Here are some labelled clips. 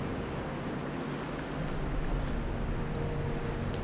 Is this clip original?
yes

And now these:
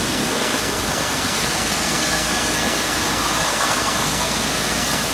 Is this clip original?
no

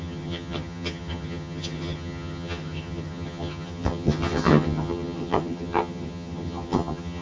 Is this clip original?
no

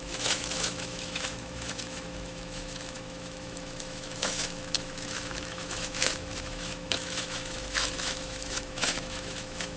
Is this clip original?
no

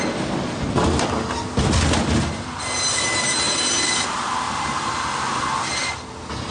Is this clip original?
yes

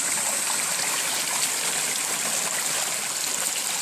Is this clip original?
yes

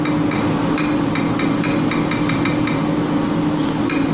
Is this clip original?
yes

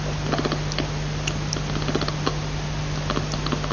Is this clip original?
yes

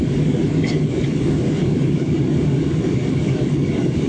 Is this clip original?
no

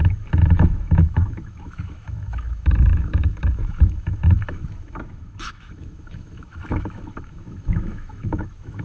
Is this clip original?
no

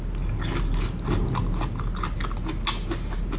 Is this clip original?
yes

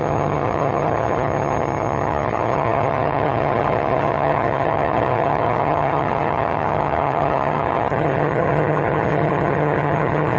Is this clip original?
no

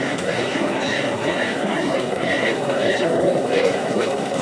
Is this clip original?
no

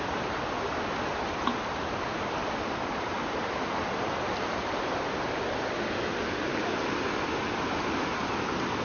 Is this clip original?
yes